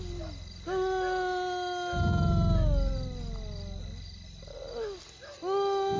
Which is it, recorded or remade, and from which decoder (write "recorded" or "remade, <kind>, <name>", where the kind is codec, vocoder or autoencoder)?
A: recorded